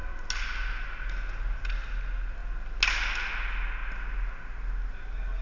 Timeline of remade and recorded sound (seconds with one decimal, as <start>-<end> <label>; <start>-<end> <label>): 0.0-5.4 recorded